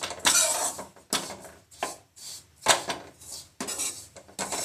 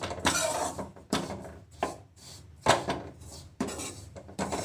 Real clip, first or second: first